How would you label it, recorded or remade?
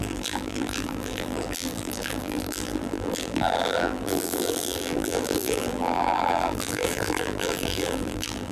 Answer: remade